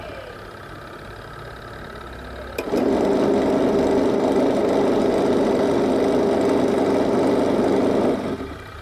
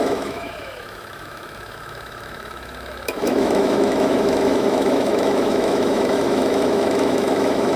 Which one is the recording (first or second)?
first